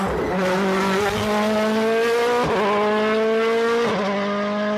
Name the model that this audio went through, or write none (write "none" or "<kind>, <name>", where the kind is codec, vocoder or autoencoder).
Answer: none